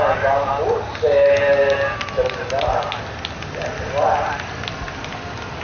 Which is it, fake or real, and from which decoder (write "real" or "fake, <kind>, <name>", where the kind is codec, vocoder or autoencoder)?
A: real